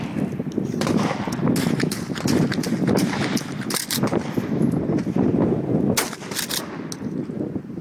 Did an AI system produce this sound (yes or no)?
no